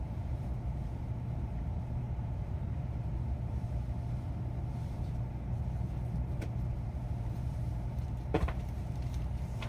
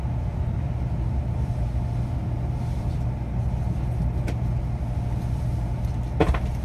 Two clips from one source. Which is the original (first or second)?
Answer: second